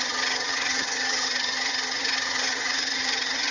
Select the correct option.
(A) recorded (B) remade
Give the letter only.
B